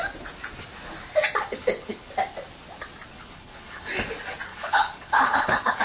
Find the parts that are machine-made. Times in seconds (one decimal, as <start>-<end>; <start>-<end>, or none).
1.6-2.1; 3.1-3.9; 4.5-5.8